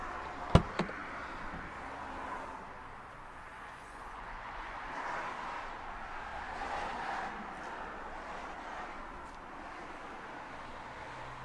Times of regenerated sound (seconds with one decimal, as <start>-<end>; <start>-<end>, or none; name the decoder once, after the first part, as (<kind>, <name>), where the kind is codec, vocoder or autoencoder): 3.5-4.9 (vocoder, Vocos)